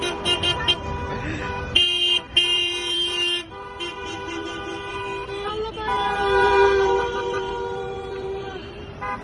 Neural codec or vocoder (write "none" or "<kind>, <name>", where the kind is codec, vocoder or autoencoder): vocoder, BigVGAN v2